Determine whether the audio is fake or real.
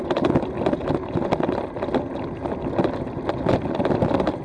real